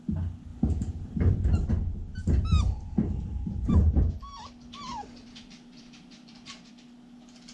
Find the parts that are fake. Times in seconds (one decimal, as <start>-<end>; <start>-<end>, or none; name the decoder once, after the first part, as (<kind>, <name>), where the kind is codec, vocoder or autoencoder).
0.5-1.3 (vocoder, BigVGAN v2); 2.2-6.7